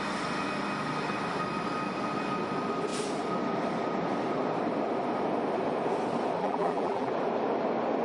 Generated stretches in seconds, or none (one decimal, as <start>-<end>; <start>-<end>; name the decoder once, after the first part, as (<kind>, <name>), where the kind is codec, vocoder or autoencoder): 6.4-7.1 (vocoder, BigVGAN v2)